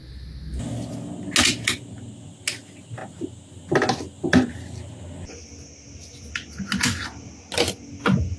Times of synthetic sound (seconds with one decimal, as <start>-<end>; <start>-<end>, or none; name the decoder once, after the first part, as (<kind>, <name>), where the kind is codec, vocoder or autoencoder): none